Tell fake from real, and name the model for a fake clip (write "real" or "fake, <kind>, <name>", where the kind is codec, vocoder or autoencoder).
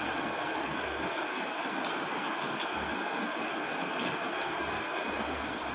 fake, codec, SNAC